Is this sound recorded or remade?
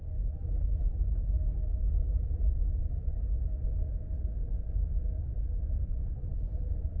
recorded